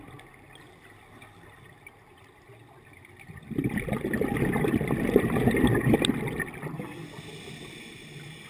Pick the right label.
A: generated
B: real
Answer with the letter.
B